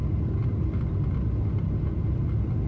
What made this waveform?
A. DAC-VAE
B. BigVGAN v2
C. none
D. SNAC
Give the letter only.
C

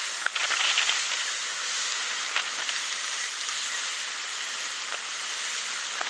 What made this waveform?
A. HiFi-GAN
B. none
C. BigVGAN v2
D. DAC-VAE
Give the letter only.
B